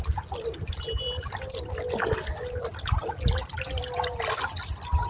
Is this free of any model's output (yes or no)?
yes